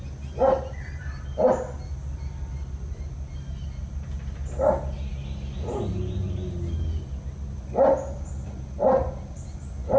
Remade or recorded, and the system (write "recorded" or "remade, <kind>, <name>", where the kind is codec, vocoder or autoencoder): recorded